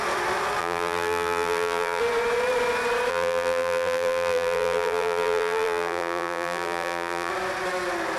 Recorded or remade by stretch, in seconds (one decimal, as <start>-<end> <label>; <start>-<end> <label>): 0.0-0.6 recorded; 0.6-2.0 remade; 2.0-3.1 recorded; 3.1-7.3 remade; 7.3-8.2 recorded